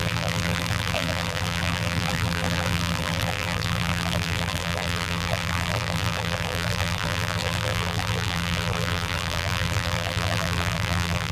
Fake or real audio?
fake